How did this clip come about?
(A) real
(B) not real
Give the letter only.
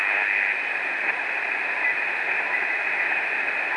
A